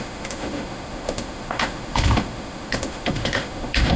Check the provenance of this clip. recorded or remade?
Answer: remade